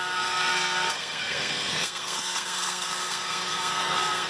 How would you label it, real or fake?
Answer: fake